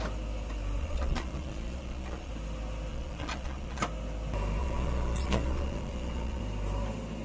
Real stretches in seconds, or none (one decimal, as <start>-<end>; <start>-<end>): 0.0-0.8; 2.3-2.9; 3.8-4.6; 6.4-7.2